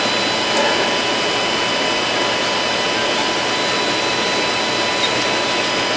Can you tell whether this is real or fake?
real